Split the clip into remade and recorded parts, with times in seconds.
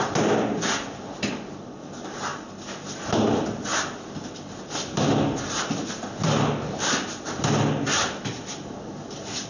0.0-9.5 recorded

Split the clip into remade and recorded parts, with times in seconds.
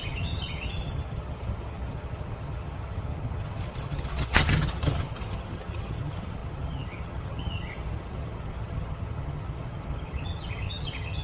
0.0-11.2 remade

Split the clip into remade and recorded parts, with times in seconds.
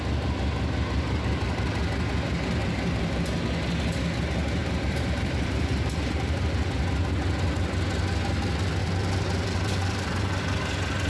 0.0-2.6 recorded; 2.6-3.2 remade; 3.2-4.6 recorded; 4.6-6.8 remade; 6.8-8.8 recorded; 8.8-10.4 remade; 10.4-11.1 recorded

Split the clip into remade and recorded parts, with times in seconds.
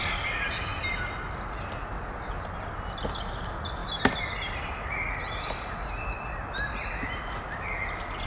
0.0-8.3 recorded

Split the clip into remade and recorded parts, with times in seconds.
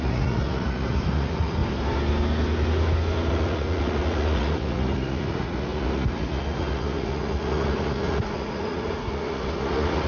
0.0-1.6 remade; 1.6-3.3 recorded; 3.3-10.1 remade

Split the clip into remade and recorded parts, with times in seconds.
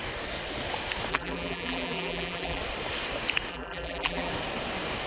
0.0-1.1 recorded; 1.1-2.6 remade; 2.6-3.5 recorded; 3.5-4.3 remade; 4.3-5.1 recorded